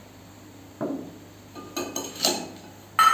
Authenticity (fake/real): real